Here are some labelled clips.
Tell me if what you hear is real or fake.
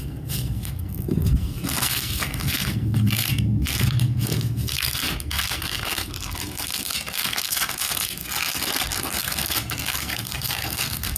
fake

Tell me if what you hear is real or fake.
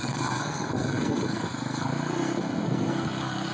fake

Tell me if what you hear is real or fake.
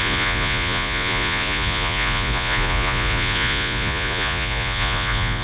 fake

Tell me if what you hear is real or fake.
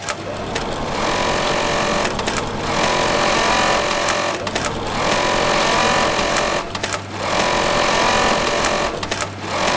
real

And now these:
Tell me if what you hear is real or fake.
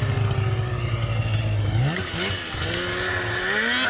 real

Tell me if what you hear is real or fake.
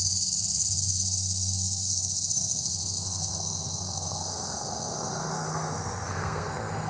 fake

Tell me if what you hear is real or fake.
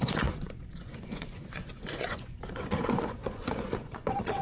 fake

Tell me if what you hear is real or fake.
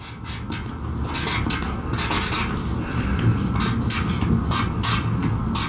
real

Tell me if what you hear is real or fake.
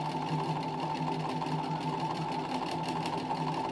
real